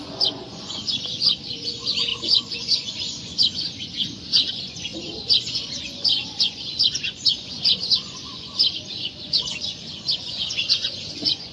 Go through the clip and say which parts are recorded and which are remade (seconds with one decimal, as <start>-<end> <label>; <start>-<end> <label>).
0.0-11.5 remade